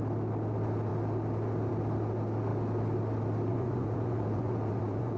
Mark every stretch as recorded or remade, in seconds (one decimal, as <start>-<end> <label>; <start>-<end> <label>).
0.0-3.5 recorded; 3.5-5.2 remade